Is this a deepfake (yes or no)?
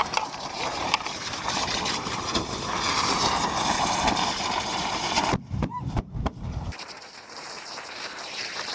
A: yes